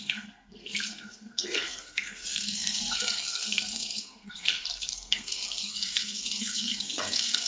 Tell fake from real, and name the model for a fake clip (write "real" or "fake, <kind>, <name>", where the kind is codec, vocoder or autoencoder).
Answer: fake, codec, SNAC